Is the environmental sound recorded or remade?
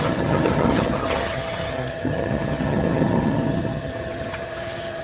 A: remade